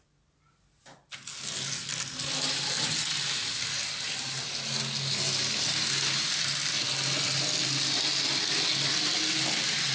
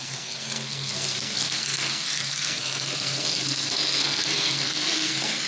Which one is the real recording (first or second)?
first